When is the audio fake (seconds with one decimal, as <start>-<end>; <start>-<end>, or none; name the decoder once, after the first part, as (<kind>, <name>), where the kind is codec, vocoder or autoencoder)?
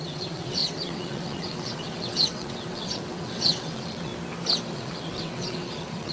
0.0-4.1 (vocoder, WaveNeXt); 4.7-6.1